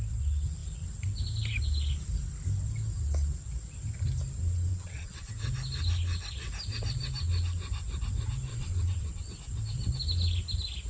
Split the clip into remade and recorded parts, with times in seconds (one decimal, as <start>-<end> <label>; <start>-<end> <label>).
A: 0.0-4.7 recorded; 4.7-5.3 remade; 5.3-8.5 recorded; 8.5-9.2 remade; 9.2-10.9 recorded